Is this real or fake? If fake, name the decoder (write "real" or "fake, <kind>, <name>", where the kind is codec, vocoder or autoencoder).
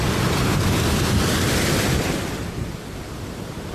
real